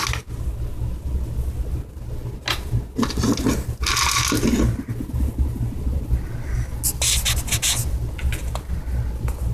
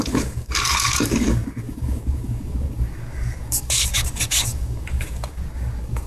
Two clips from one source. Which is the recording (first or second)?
first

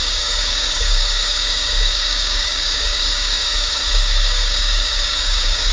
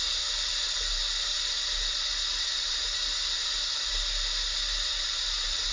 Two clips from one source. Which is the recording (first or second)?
second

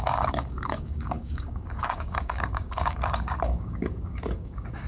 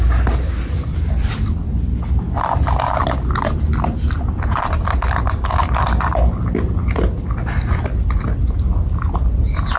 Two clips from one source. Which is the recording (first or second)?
second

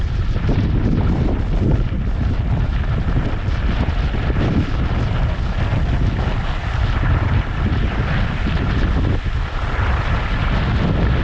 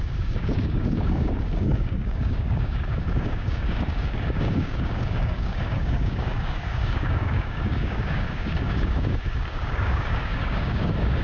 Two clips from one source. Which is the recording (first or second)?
first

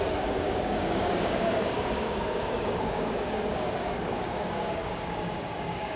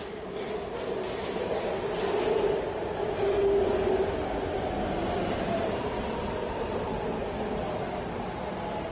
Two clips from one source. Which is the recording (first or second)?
second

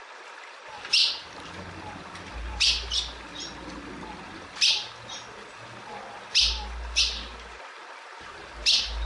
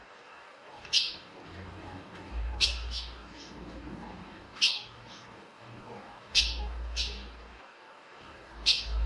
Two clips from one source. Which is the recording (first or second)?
first